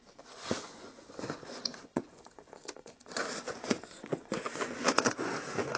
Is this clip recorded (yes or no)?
no